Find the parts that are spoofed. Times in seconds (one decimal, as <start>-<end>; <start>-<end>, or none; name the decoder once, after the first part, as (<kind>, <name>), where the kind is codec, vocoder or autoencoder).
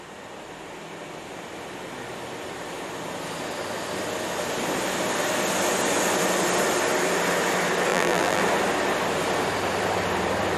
7.9-8.4 (vocoder, BigVGAN v2)